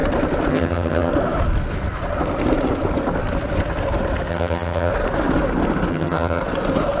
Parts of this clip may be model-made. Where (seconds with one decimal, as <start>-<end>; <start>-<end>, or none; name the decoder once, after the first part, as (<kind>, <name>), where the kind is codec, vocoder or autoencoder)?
0.5-1.1 (vocoder, HiFi-GAN); 4.3-4.9; 5.9-6.4